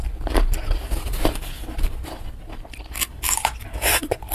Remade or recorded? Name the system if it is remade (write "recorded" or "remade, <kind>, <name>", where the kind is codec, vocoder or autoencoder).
recorded